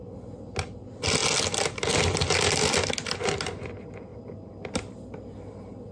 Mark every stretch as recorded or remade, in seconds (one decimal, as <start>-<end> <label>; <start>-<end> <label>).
0.0-5.9 recorded